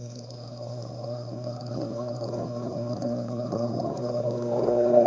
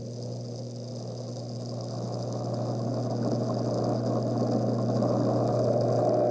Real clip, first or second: second